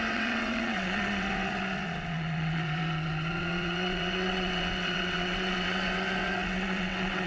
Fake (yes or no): yes